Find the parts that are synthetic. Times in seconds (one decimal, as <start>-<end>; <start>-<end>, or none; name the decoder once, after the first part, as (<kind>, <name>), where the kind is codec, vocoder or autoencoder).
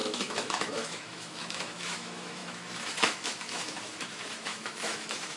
0.0-5.4 (autoencoder, DAC-VAE)